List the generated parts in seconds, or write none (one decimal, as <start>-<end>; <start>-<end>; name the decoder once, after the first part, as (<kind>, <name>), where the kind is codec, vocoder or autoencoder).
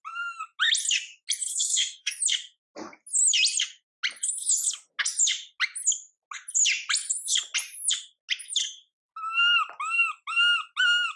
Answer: 1.5-2.2 (codec, SNAC); 8.6-9.1